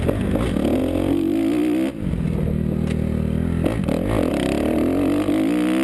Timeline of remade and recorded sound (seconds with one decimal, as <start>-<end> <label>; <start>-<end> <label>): 0.0-5.8 recorded